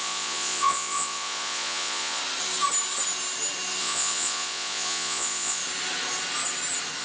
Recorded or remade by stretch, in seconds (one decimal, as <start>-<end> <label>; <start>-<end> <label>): 0.0-2.2 remade; 2.2-3.8 recorded; 3.8-5.6 remade; 5.6-7.0 recorded